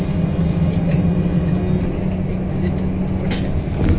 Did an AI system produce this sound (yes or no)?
no